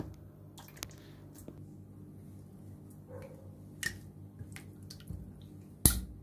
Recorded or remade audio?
recorded